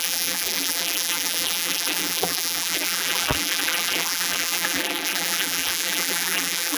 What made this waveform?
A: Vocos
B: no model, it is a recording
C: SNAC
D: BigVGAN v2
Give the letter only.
D